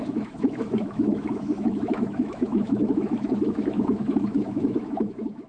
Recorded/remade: remade